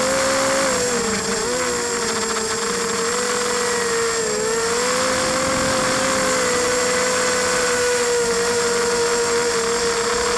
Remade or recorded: recorded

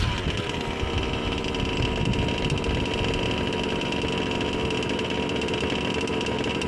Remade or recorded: recorded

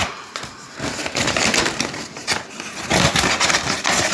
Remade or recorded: recorded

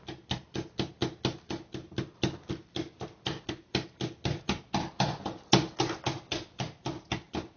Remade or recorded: recorded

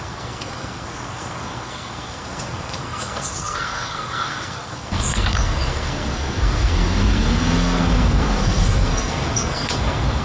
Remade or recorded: remade